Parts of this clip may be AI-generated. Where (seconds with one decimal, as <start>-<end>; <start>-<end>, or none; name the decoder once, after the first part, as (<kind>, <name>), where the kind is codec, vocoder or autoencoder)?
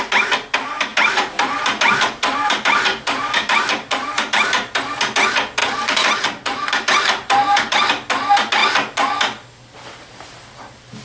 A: 0.9-4.8 (vocoder, BigVGAN v2); 5.6-7.9